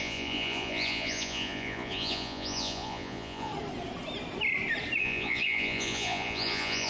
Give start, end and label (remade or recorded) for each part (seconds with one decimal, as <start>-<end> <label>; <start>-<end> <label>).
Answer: 0.0-3.5 remade; 3.5-5.0 recorded; 5.0-6.9 remade